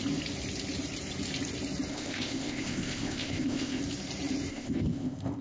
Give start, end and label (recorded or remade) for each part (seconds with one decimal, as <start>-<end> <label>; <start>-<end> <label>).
0.0-1.9 recorded; 1.9-3.8 remade; 3.8-4.5 recorded; 4.5-5.4 remade